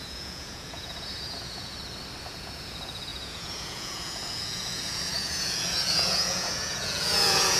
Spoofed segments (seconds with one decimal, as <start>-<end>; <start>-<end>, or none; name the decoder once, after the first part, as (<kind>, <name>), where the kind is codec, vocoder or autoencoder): 0.0-1.7 (vocoder, Vocos); 2.2-7.6